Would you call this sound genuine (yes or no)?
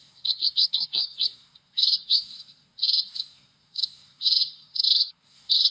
no